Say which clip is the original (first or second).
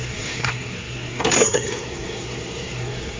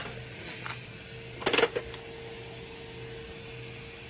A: second